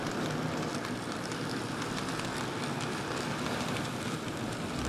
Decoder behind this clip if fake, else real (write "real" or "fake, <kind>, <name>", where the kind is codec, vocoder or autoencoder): fake, vocoder, BigVGAN v2